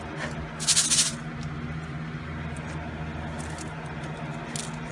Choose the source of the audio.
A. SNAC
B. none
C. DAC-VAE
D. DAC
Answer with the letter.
B